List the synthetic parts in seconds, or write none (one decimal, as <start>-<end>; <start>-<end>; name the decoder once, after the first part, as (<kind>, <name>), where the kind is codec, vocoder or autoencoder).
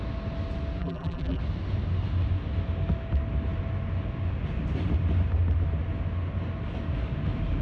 0.8-1.4 (vocoder, BigVGAN v2)